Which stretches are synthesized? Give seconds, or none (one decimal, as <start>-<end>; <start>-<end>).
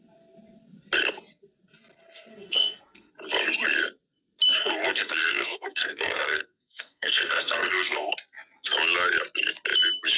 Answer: 2.3-3.1; 4.6-8.1